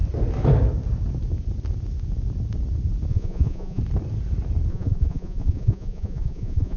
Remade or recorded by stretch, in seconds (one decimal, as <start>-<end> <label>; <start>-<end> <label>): 0.0-3.1 recorded; 3.1-3.8 remade; 3.8-4.7 recorded; 4.7-6.8 remade